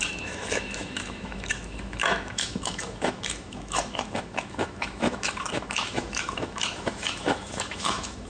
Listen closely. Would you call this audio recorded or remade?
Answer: remade